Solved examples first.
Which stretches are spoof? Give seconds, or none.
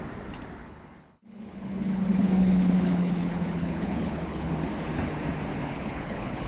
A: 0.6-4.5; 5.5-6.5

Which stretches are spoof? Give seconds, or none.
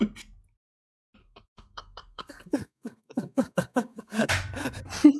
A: 1.2-4.3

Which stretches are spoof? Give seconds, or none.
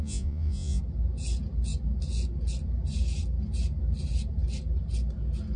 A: 0.0-0.8